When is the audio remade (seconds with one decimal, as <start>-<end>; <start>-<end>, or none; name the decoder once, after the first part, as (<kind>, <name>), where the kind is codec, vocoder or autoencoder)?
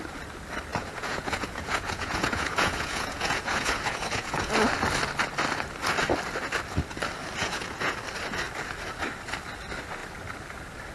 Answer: 0.7-4.5 (vocoder, Vocos); 7.4-8.0